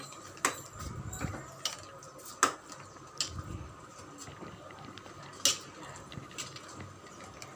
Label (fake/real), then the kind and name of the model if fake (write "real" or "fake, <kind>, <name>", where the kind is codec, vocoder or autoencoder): real